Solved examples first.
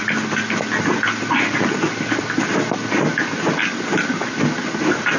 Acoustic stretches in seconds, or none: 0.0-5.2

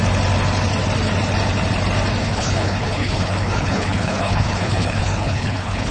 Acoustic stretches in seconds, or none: 0.0-2.2